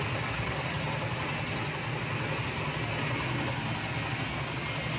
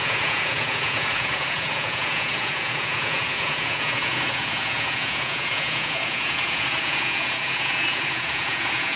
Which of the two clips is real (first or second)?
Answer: first